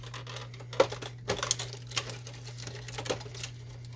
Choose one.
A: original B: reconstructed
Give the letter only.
A